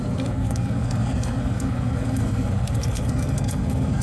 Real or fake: fake